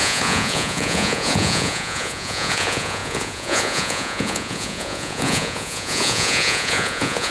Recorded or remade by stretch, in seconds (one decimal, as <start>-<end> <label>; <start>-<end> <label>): 0.0-7.3 remade